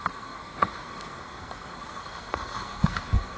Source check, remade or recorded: remade